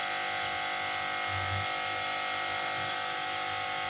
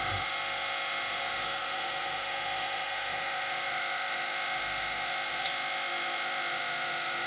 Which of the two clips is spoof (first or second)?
second